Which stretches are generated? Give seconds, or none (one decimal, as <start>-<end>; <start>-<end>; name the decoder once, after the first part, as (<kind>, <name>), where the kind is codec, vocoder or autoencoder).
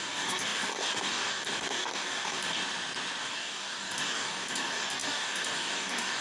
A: 0.0-2.6 (codec, DAC); 3.2-6.2